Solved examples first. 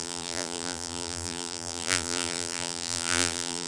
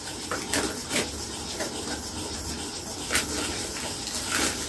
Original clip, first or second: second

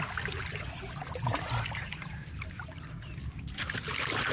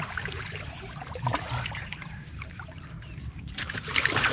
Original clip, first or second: first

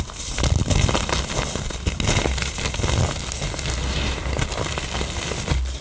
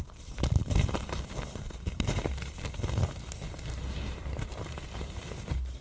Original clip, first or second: first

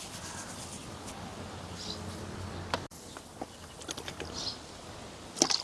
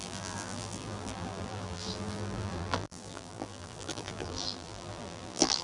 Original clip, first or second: first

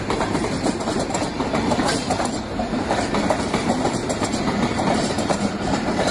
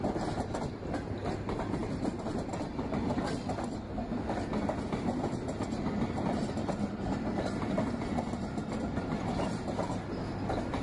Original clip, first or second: second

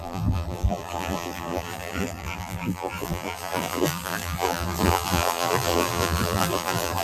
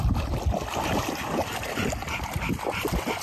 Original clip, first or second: second